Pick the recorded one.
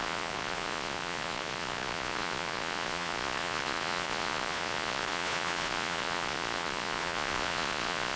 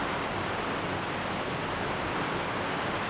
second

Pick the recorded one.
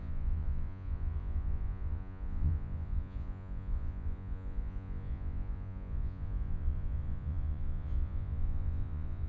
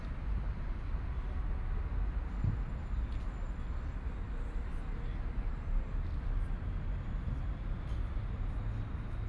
second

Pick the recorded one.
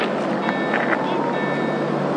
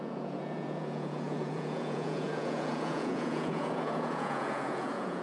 first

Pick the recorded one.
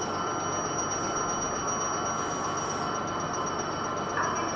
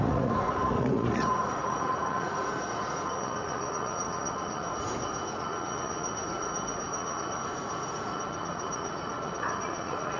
first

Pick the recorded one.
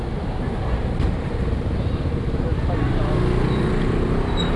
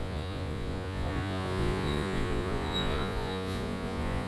first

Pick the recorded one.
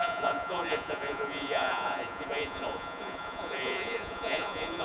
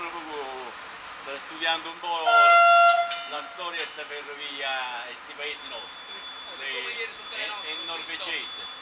second